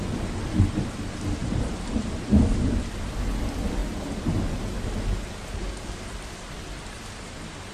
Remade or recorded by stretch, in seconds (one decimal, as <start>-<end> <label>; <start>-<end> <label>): 0.0-7.7 recorded